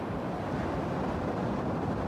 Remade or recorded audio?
recorded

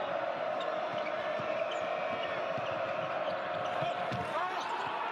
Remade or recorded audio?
recorded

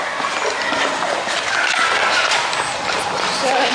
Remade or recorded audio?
recorded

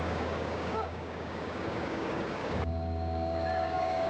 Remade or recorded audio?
remade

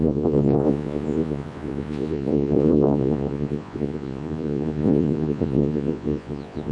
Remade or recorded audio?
remade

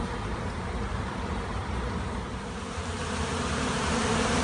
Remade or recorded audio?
remade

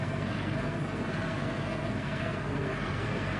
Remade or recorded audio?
remade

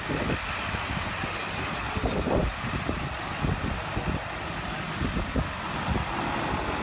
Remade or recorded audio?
recorded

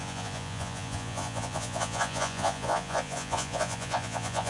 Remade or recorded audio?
remade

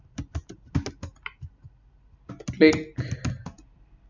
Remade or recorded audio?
recorded